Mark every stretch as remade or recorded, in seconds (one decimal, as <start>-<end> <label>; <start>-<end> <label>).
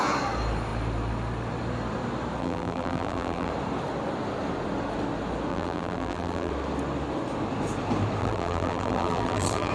0.0-2.4 recorded; 2.4-3.5 remade; 3.5-5.5 recorded; 5.5-6.5 remade; 6.5-8.2 recorded; 8.2-9.7 remade